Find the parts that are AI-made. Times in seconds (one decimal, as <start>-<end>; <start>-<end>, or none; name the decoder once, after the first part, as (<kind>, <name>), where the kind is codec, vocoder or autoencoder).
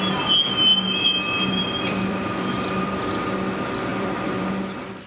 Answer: 0.7-3.2 (vocoder, BigVGAN v2); 3.9-4.6